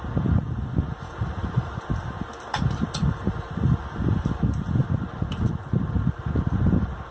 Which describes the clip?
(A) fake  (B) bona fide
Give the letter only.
B